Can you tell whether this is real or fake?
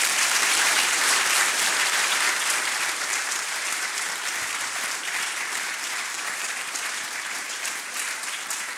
fake